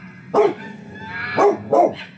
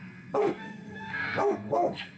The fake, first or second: second